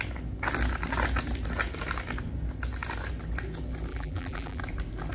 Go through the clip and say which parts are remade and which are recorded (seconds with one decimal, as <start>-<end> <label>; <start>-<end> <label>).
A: 0.0-3.9 recorded; 3.9-4.6 remade; 4.6-5.1 recorded